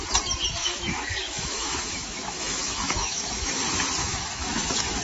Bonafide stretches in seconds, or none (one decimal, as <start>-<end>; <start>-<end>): 0.0-0.6; 3.6-4.0

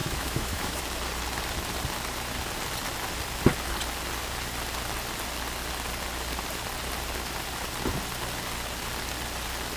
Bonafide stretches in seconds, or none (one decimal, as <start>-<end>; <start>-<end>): 0.8-9.8

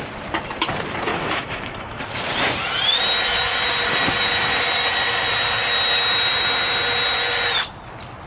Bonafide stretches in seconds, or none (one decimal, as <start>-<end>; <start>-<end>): 0.0-1.1; 2.0-8.3

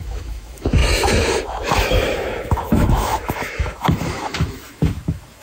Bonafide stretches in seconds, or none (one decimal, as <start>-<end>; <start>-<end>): none

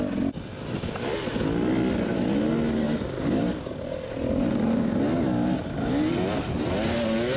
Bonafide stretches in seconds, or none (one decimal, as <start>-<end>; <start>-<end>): 0.0-7.4